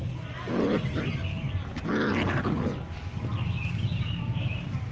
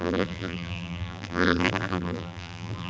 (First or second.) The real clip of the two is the first